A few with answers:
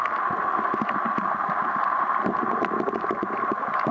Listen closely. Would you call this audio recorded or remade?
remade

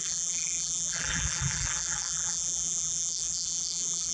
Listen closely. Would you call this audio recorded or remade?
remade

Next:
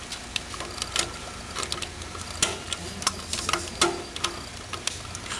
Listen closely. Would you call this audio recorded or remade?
recorded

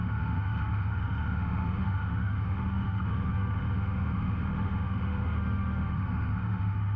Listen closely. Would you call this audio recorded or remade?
remade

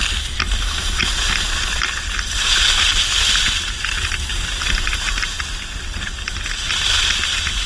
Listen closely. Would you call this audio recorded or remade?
recorded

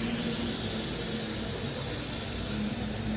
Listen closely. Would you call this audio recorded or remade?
recorded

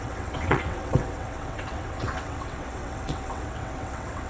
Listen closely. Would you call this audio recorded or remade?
remade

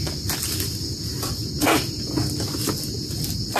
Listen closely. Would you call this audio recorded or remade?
recorded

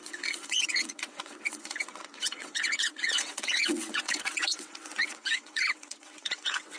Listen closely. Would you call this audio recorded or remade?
remade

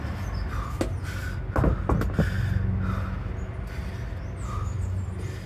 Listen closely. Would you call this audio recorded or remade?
recorded